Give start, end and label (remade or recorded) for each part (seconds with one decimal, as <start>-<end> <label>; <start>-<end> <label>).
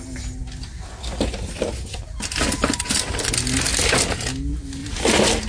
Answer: 0.0-4.8 recorded; 4.8-5.5 remade